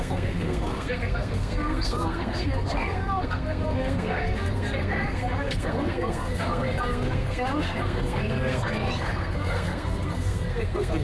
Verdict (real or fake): fake